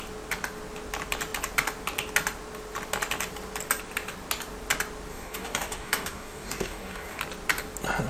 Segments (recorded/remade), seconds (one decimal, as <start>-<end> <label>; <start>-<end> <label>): 0.0-5.1 recorded; 5.1-7.2 remade; 7.2-8.1 recorded